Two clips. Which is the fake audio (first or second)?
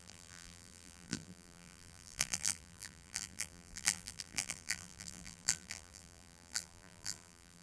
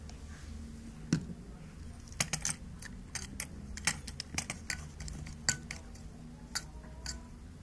first